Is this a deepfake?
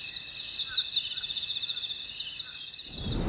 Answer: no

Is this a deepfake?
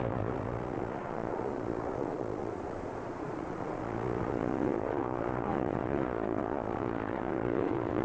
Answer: yes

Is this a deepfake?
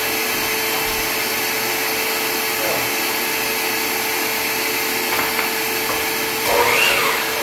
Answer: no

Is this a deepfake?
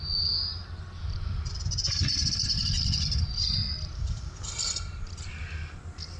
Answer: yes